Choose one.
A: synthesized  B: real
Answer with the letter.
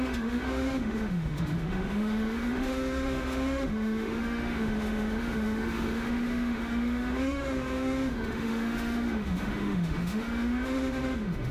A